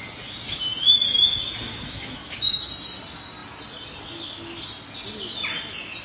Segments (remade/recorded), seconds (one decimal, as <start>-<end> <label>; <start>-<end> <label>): 0.0-1.7 recorded; 1.7-2.7 remade; 2.7-6.0 recorded